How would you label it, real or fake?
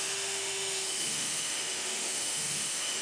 fake